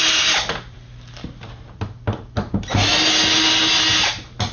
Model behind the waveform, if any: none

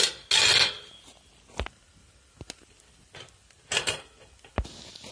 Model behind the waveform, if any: none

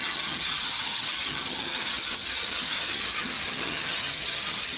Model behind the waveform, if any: vocoder, HiFi-GAN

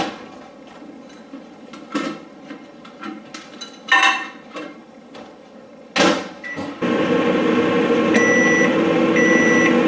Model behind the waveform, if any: none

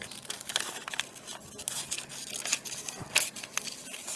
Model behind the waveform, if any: none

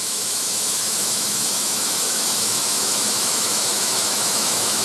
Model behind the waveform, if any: autoencoder, DAC-VAE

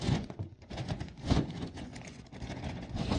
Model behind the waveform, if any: vocoder, Vocos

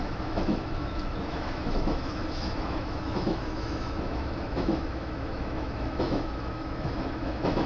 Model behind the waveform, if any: autoencoder, DAC-VAE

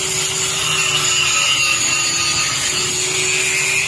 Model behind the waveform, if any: none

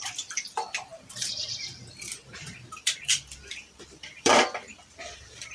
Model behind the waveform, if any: vocoder, BigVGAN v2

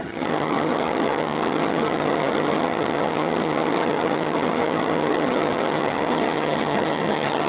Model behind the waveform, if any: vocoder, HiFi-GAN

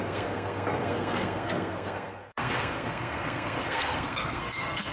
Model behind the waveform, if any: codec, SNAC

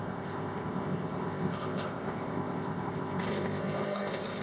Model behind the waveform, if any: codec, ZipCodec